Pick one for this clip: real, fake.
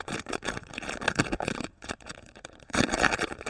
fake